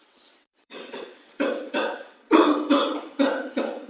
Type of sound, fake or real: fake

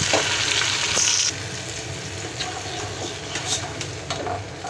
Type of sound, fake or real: real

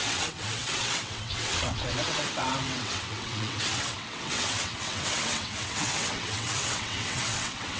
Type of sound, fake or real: fake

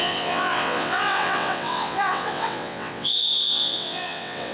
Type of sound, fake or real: fake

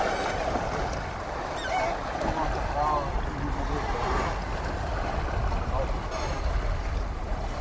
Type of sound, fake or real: real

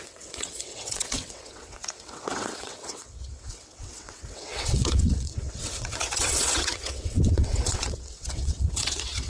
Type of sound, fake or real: fake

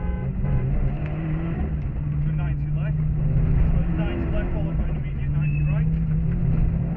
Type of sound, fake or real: real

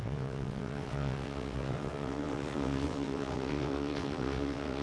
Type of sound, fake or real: fake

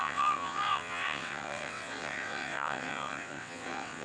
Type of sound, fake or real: fake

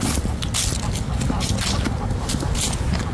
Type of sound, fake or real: real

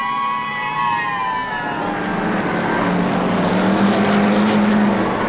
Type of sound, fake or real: real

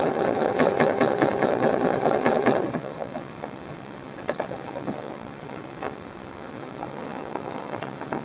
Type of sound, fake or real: fake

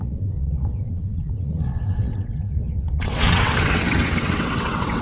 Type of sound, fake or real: fake